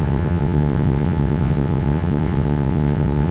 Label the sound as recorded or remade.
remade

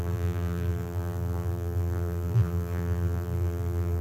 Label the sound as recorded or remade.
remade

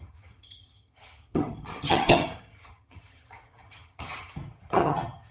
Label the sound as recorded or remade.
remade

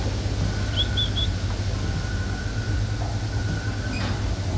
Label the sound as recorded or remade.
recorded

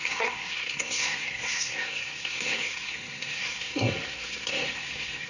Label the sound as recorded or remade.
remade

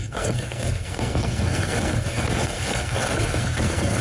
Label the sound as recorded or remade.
remade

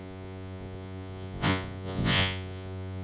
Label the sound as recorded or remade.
remade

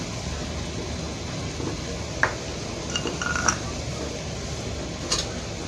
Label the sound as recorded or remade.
recorded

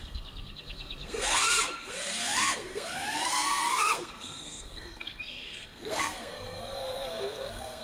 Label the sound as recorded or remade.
remade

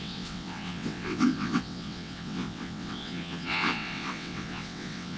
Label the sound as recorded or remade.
remade